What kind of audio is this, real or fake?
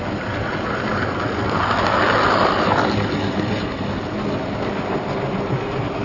real